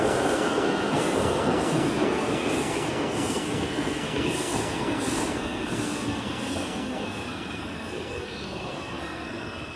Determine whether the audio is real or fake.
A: fake